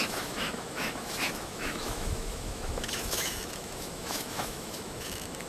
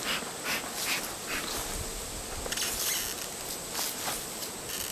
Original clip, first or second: second